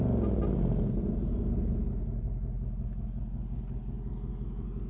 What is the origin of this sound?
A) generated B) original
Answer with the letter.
B